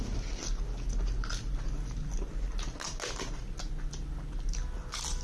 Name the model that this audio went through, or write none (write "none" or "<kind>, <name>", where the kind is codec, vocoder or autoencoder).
none